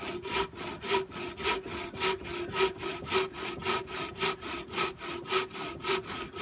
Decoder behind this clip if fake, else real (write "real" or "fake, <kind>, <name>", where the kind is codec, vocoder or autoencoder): real